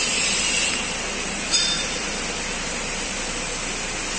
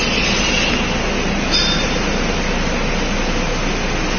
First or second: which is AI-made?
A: first